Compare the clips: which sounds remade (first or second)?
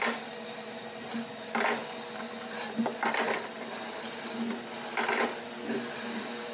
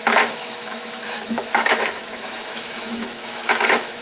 second